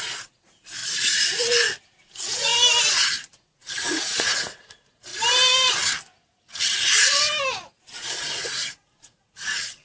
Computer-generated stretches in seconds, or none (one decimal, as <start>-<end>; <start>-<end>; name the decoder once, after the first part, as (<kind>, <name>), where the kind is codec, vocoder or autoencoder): 0.0-0.8 (vocoder, Vocos); 1.8-2.5; 3.4-5.1; 7.8-9.8